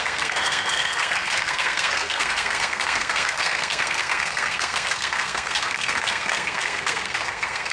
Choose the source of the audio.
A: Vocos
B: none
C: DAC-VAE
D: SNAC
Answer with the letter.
D